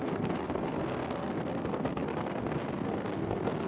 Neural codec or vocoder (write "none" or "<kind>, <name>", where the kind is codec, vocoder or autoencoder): codec, SNAC